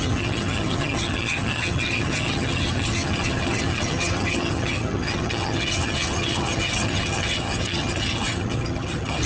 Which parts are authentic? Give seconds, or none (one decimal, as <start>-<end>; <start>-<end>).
none